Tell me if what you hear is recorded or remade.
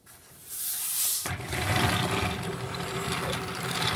recorded